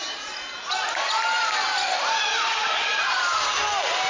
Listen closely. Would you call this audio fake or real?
real